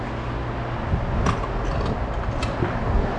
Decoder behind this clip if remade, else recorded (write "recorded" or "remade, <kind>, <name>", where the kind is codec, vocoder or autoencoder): recorded